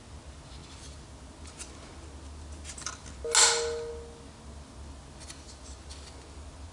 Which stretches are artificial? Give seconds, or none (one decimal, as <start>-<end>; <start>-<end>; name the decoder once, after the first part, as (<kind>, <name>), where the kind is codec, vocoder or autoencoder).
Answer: none